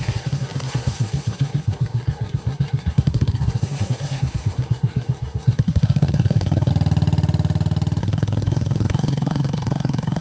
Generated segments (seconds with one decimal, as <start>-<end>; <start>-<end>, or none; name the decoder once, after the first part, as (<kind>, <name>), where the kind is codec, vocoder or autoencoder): 0.0-6.7 (codec, SNAC); 8.0-10.2